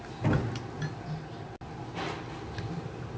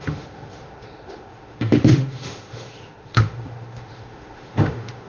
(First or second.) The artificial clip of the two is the second